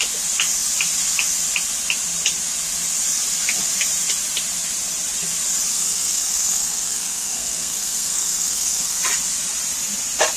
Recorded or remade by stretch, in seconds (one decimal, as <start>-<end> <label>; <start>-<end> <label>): 0.0-5.7 recorded; 5.7-9.0 remade; 9.0-10.4 recorded

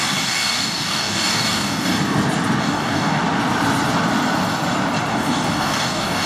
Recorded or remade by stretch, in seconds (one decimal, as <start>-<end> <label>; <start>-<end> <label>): 0.0-1.9 remade; 1.9-2.6 recorded; 2.6-3.2 remade; 3.2-5.1 recorded; 5.1-6.3 remade

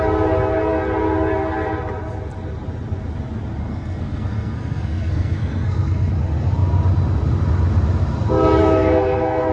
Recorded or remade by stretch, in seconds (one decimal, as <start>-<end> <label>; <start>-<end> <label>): 0.0-3.6 recorded; 3.6-6.1 remade; 6.1-8.6 recorded; 8.6-9.5 remade

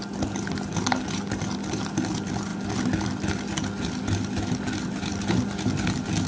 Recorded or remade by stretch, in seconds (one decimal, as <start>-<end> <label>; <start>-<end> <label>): 0.0-0.7 remade; 0.7-1.7 recorded; 1.7-2.5 remade; 2.5-5.2 recorded; 5.2-6.3 remade

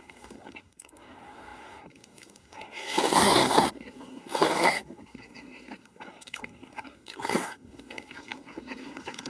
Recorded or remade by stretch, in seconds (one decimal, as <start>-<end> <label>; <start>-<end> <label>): 0.0-9.3 remade

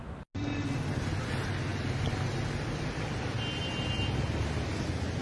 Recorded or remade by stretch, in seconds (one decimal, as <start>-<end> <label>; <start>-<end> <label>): 0.0-5.2 recorded